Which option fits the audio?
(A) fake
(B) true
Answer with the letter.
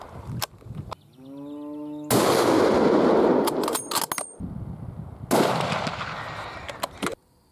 B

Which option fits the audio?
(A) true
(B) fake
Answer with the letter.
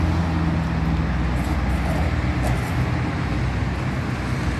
A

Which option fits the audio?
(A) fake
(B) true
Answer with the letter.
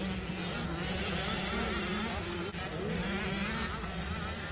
B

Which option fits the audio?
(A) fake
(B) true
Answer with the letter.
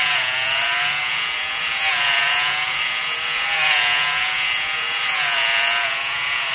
A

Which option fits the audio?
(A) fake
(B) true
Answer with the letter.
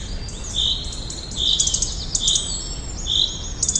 B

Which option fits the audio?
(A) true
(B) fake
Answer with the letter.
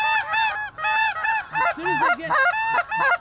A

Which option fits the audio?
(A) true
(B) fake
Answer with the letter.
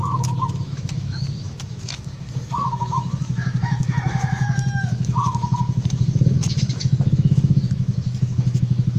B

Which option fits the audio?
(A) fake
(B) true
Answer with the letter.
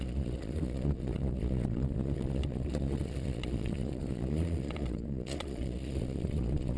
A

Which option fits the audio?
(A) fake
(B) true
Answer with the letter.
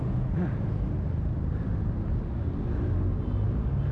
B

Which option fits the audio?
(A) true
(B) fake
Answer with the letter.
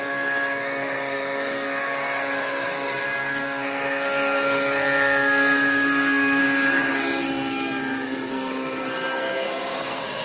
B